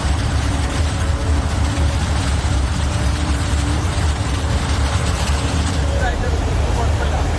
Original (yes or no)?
no